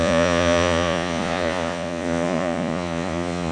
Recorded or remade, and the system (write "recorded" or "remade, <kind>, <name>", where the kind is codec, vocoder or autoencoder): remade, vocoder, Vocos